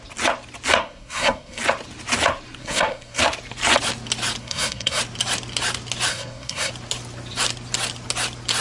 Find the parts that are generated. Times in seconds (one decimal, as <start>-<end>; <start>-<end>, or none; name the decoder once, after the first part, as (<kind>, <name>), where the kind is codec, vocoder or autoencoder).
0.8-1.6 (codec, SNAC); 2.6-3.2; 4.4-5.0; 6.1-6.7